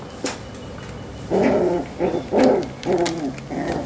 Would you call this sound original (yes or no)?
yes